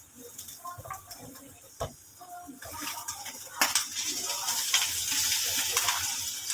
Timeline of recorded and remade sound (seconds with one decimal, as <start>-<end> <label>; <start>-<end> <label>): 0.0-6.5 recorded